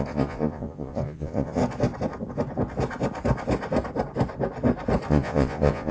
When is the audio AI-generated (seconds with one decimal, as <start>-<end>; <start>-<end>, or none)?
0.0-1.6; 5.1-5.9